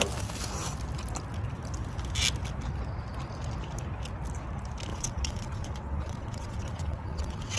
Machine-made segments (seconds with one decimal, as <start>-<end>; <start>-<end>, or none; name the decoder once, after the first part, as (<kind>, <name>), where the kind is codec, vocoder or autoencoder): 4.9-7.6 (vocoder, WaveNeXt)